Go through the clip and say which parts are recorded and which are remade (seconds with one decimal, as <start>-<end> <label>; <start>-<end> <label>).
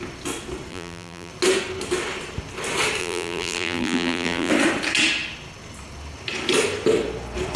0.0-0.7 recorded; 0.7-1.3 remade; 1.3-3.0 recorded; 3.0-4.5 remade; 4.5-7.6 recorded